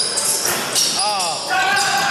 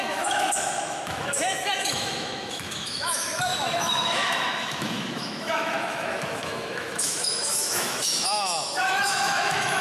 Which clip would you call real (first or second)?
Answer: first